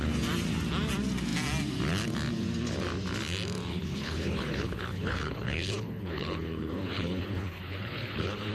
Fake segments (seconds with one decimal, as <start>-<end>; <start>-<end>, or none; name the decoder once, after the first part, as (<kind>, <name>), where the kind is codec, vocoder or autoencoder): 3.7-8.5 (codec, HILCodec)